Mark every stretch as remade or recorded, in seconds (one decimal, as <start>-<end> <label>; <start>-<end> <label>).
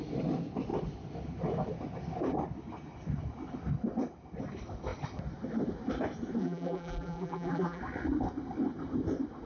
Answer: 0.0-6.4 recorded; 6.4-7.8 remade; 7.8-9.5 recorded